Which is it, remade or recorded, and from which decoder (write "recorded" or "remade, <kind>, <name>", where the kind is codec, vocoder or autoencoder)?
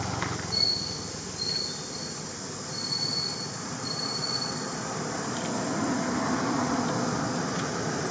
recorded